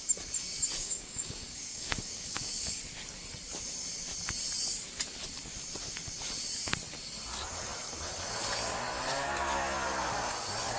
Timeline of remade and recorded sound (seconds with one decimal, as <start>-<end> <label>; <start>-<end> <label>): 0.0-0.8 recorded; 0.8-2.8 remade; 2.8-10.8 recorded